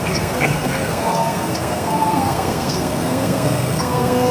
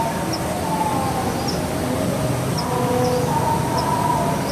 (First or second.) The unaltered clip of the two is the second